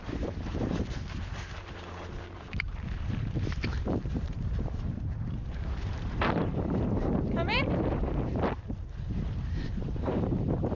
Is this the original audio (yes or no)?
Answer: no